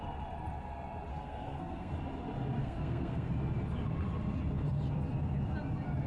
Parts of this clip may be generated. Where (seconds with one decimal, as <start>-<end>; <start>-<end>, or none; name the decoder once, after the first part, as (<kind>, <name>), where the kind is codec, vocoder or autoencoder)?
1.1-1.9 (codec, SNAC); 2.6-3.3